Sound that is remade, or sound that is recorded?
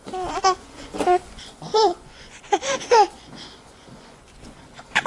remade